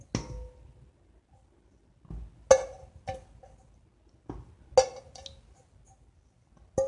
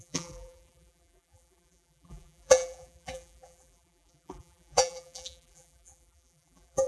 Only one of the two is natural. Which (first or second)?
first